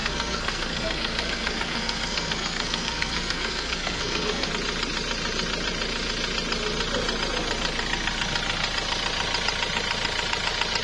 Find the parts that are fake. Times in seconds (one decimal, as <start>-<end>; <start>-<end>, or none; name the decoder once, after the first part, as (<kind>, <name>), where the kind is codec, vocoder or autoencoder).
0.0-4.5 (codec, SNAC)